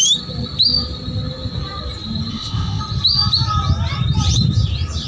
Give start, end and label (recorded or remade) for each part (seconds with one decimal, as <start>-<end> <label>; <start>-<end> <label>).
0.0-2.3 recorded; 2.3-2.8 remade; 2.8-5.1 recorded

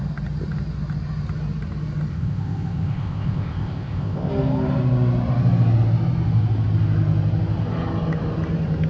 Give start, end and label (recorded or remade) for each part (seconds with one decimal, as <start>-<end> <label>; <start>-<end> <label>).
0.0-2.1 recorded; 2.1-4.3 remade; 4.3-8.9 recorded

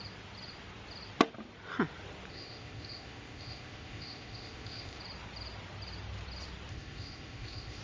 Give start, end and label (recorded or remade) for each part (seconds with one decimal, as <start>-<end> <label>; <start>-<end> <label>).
0.0-2.3 recorded; 2.3-5.0 remade; 5.0-6.7 recorded; 6.7-7.8 remade

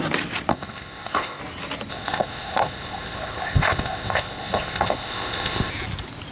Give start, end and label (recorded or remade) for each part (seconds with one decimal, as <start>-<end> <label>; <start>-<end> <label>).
0.0-0.5 recorded; 0.5-1.4 remade; 1.4-1.9 recorded; 1.9-5.7 remade; 5.7-6.3 recorded

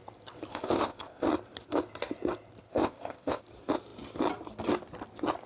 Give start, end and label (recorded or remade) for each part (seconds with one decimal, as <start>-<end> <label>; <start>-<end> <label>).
0.0-0.5 recorded; 0.5-1.3 remade; 1.3-2.7 recorded; 2.7-3.4 remade; 3.4-5.5 recorded

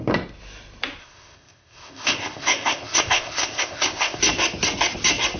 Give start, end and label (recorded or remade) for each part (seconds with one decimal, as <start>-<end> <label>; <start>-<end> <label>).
0.0-1.0 recorded; 1.0-4.2 remade; 4.2-5.4 recorded

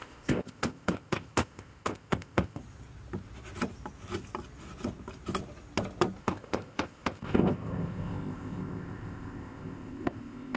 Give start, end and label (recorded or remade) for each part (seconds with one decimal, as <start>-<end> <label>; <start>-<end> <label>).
0.0-2.6 remade; 2.6-6.2 recorded; 6.2-10.6 remade

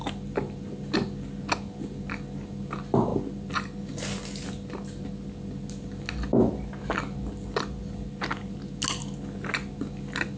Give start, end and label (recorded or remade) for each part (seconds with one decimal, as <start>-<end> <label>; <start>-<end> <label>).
0.0-10.4 recorded